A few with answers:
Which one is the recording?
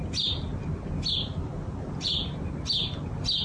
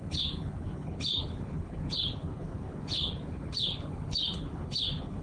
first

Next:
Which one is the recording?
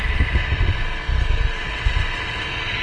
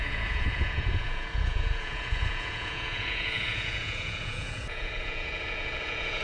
first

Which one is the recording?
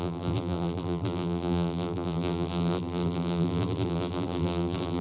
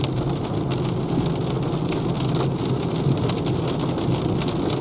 second